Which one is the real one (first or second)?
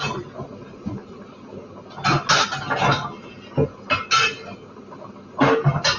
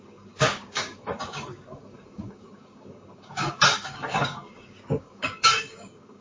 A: first